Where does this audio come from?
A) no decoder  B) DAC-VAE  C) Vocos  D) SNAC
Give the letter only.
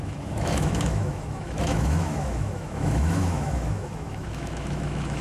B